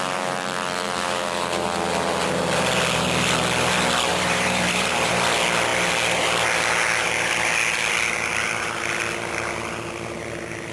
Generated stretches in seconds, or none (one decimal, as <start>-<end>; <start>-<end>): 4.1-5.1